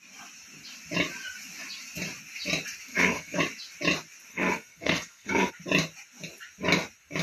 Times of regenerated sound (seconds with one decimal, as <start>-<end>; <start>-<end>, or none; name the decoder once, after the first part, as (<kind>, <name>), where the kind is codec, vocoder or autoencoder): 2.9-3.4 (codec, SNAC); 4.3-5.5